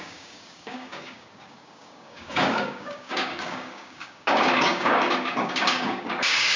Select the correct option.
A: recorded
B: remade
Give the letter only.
B